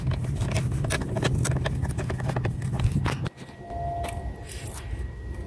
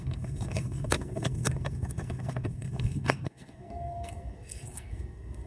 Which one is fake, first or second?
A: second